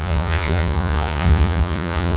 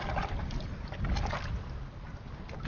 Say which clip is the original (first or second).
second